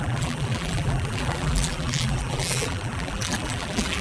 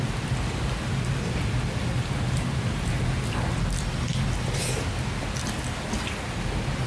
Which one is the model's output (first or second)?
first